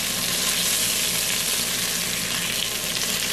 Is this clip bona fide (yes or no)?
yes